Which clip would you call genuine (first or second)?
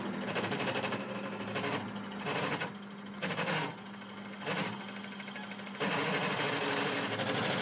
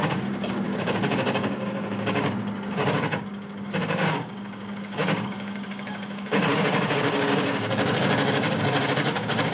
first